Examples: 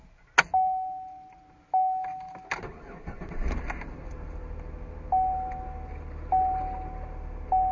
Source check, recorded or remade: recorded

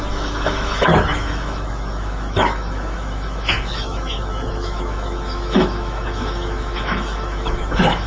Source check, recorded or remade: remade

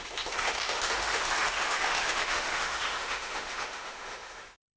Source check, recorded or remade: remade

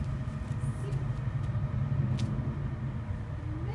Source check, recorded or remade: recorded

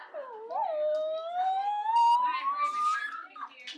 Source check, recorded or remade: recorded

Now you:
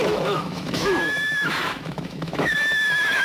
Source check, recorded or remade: remade